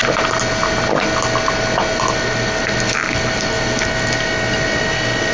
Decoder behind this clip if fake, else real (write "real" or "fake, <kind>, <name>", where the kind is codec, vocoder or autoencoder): real